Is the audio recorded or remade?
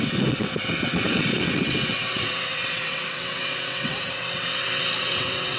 remade